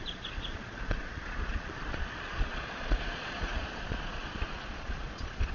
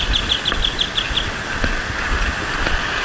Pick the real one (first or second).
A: second